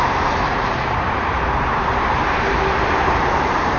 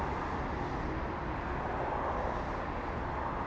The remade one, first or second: first